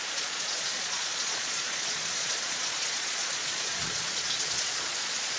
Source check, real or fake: fake